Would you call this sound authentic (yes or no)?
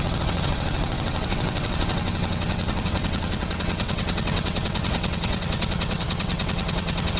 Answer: no